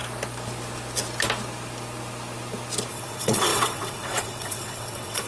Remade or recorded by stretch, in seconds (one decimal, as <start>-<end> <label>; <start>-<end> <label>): 0.0-2.9 recorded; 2.9-5.3 remade